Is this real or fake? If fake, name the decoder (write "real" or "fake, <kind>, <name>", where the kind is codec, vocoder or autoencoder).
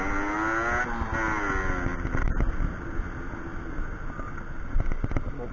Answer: real